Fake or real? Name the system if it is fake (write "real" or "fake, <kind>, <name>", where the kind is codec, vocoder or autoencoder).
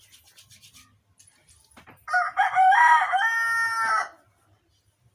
real